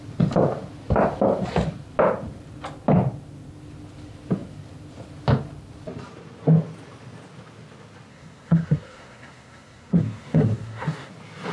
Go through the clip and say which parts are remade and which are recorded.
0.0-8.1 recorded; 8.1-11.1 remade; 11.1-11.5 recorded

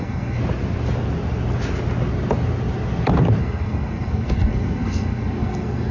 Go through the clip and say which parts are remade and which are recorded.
0.0-0.4 remade; 0.4-3.4 recorded; 3.4-5.9 remade

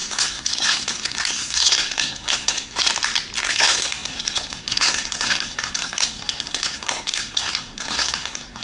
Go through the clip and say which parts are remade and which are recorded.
0.0-2.9 remade; 2.9-3.4 recorded; 3.4-8.6 remade

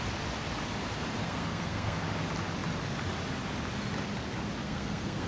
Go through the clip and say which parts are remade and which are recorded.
0.0-1.2 recorded; 1.2-2.0 remade; 2.0-4.6 recorded; 4.6-5.3 remade

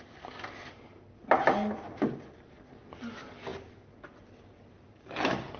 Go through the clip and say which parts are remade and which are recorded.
0.0-5.6 recorded

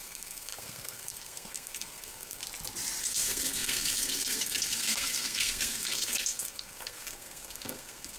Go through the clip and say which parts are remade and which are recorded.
0.0-2.4 remade; 2.4-3.0 recorded; 3.0-8.2 remade